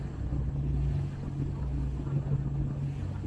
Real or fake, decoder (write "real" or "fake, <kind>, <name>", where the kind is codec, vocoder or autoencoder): real